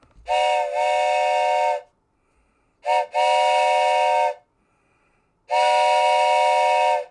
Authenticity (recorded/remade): recorded